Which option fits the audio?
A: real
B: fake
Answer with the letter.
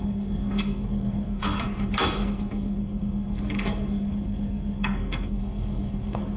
B